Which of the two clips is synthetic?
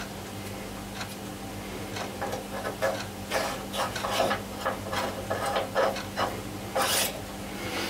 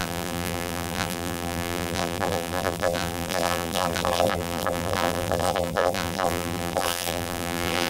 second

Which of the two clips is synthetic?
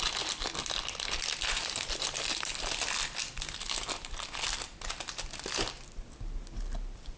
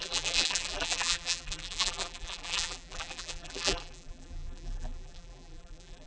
second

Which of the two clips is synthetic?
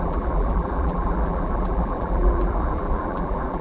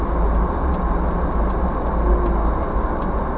first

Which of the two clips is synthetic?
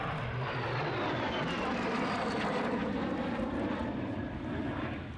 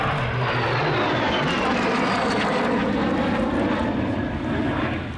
first